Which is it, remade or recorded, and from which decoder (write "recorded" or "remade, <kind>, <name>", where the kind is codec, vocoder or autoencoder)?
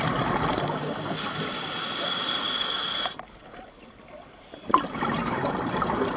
recorded